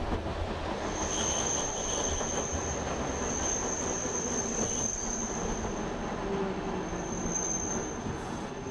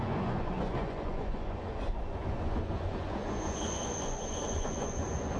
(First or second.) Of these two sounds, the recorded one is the first